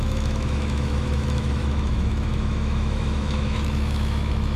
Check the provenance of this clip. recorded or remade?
remade